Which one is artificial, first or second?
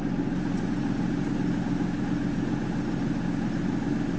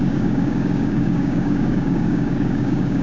second